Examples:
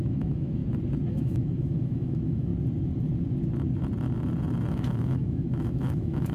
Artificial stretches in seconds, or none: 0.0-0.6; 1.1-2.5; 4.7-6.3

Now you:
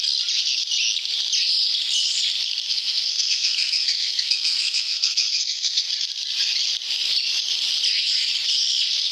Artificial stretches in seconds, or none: 2.7-5.9

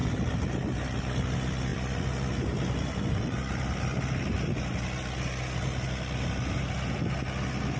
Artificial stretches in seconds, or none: none